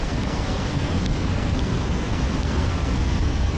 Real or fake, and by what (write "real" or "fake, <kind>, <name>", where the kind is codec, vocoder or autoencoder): fake, codec, SNAC